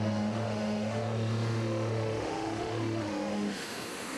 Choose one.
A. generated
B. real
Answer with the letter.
A